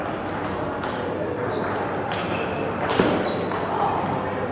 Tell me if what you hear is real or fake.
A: real